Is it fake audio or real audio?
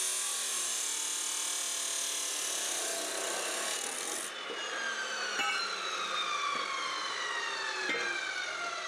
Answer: real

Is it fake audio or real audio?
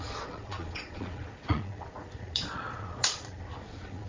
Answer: fake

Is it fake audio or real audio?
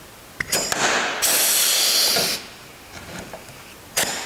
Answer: real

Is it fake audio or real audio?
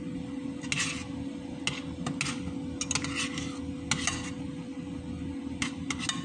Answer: real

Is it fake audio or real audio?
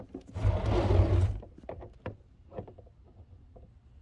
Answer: real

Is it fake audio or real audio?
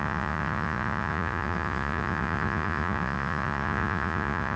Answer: fake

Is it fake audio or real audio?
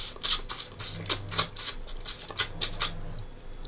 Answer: real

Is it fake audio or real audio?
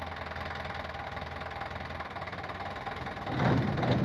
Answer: real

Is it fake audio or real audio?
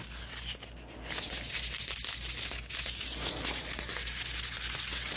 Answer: real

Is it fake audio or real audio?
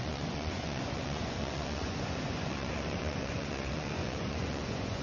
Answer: fake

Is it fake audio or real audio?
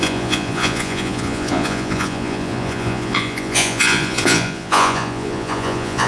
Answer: fake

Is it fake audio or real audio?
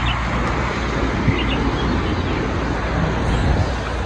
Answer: real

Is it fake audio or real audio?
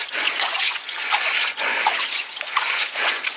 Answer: fake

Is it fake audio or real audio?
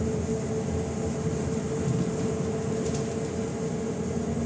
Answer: real